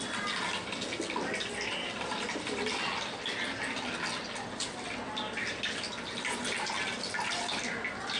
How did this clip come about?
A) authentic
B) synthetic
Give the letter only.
A